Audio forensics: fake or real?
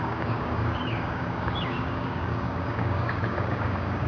fake